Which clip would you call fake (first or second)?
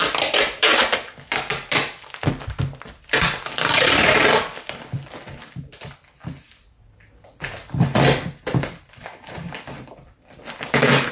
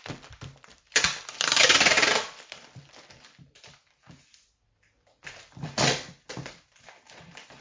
second